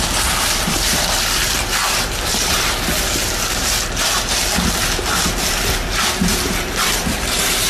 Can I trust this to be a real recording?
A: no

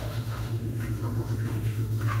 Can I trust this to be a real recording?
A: no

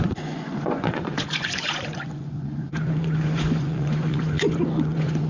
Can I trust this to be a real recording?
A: no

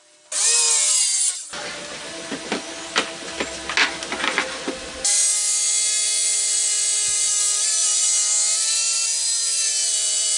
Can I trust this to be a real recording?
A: yes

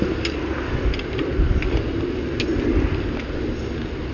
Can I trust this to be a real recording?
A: yes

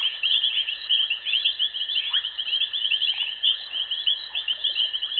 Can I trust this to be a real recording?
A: no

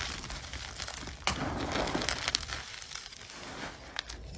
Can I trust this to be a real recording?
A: yes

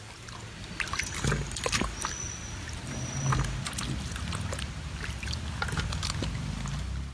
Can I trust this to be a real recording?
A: yes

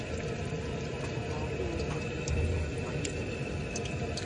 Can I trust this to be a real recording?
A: yes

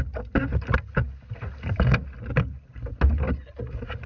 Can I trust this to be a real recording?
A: yes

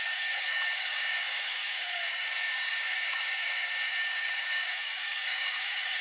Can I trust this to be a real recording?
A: no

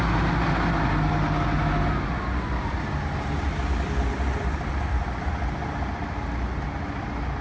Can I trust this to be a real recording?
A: yes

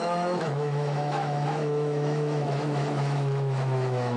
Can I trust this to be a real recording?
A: no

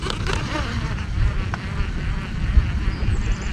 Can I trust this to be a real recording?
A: yes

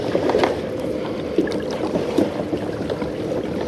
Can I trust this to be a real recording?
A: yes